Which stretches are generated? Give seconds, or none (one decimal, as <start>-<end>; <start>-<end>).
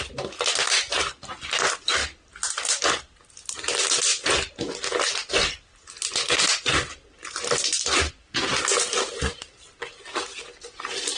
none